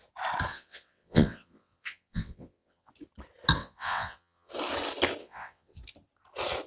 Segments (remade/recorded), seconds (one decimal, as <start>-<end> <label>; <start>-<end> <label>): 0.0-0.5 recorded; 0.5-2.9 remade; 2.9-3.6 recorded; 3.6-4.5 remade; 4.5-5.2 recorded; 5.2-5.8 remade; 5.8-6.7 recorded